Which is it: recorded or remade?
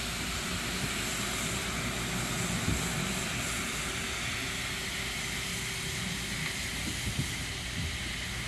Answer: recorded